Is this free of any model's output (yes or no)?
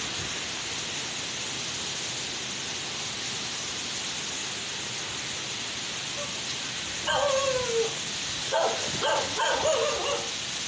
yes